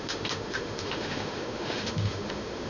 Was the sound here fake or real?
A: fake